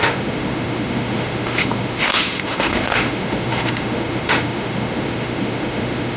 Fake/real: fake